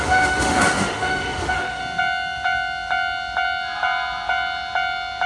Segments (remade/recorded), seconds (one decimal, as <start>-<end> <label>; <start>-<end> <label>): 0.0-1.8 remade; 1.8-5.3 recorded